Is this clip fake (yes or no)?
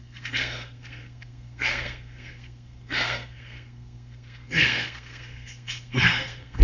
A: yes